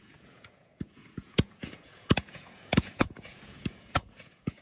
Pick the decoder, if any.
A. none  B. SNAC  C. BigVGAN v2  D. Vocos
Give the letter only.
D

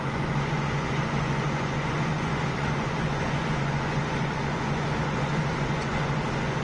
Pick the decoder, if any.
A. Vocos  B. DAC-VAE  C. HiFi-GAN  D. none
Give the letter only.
A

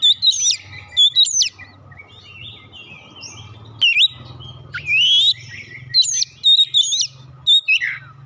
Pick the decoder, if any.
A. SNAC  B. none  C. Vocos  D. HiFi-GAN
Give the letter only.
B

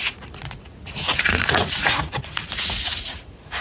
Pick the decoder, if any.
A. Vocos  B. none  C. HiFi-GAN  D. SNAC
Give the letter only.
A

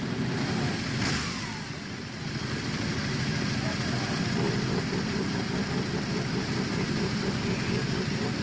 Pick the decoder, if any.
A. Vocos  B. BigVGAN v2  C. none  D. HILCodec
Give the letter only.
C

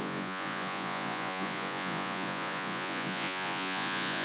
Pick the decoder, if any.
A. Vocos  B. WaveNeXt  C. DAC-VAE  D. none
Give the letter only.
A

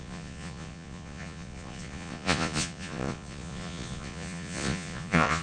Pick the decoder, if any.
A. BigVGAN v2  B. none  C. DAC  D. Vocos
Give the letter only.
D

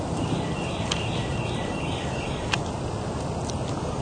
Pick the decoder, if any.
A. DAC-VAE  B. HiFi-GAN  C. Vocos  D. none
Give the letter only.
D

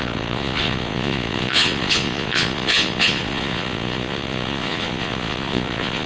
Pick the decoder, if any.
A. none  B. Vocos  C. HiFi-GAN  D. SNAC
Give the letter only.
B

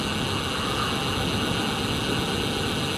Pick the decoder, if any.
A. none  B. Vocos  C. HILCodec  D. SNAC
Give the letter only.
A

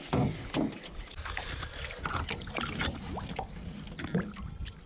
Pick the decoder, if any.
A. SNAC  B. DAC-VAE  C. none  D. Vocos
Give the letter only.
C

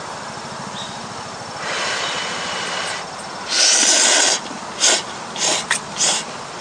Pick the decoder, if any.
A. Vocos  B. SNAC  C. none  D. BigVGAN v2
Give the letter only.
C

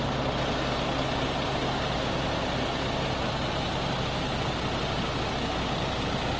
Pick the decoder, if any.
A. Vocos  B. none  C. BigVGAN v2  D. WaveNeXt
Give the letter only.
B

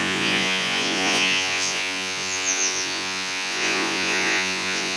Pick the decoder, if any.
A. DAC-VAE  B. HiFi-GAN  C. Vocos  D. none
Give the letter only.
C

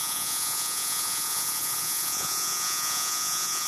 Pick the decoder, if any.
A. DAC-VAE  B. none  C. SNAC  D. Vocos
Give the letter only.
D